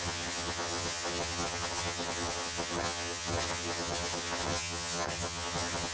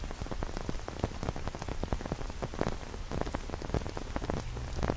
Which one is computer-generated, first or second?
first